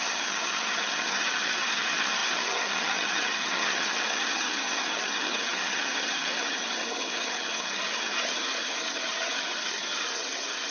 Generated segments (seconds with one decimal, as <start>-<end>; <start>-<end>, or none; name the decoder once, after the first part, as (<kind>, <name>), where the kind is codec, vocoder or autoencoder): 0.0-10.7 (vocoder, HiFi-GAN)